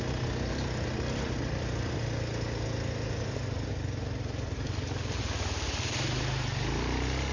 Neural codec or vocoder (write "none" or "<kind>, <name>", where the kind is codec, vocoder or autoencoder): none